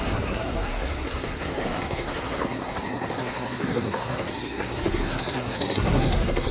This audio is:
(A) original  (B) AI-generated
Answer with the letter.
B